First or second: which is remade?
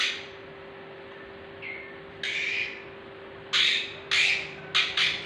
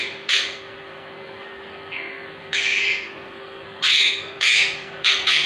second